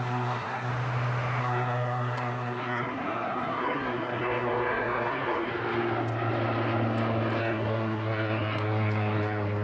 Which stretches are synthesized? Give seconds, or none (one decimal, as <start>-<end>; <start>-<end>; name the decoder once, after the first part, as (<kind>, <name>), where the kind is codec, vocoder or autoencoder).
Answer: 0.0-0.7 (codec, SNAC); 1.4-5.5; 7.4-9.6